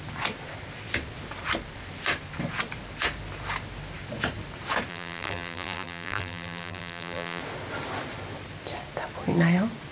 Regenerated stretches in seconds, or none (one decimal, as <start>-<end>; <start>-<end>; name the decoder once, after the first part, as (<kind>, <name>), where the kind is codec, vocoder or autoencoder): 4.9-7.4 (vocoder, BigVGAN v2)